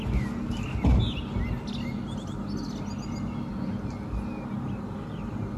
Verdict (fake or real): real